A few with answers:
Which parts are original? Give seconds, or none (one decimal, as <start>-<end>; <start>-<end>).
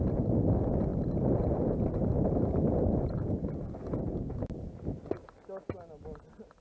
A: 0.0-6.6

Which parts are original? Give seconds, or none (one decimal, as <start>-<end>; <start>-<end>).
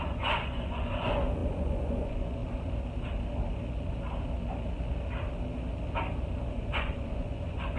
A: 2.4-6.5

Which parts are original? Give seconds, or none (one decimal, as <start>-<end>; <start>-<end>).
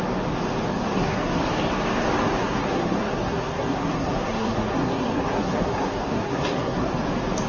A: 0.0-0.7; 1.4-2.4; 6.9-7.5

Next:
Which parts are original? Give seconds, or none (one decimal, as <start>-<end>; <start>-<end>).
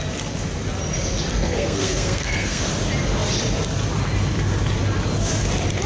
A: 0.0-1.3; 2.7-5.9